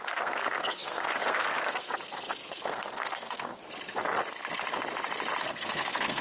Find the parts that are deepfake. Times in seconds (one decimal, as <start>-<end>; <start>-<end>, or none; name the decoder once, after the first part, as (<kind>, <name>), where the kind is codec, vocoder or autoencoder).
0.0-3.6 (codec, SNAC); 5.4-6.2